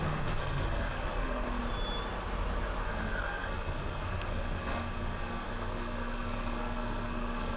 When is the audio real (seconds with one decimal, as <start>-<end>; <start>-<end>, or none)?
1.6-2.8